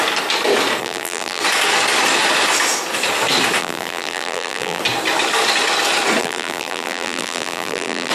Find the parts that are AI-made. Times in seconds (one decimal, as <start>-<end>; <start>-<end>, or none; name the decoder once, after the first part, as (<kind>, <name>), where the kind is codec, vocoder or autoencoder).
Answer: 0.8-1.4 (vocoder, BigVGAN v2); 3.6-4.8; 6.2-8.1